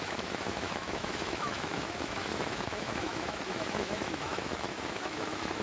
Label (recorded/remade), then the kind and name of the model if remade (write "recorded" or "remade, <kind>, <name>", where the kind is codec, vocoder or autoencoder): remade, autoencoder, DAC-VAE